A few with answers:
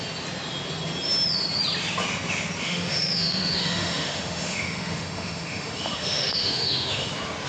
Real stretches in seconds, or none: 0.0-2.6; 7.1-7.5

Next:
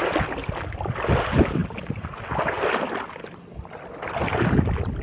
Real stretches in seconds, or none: 0.0-5.0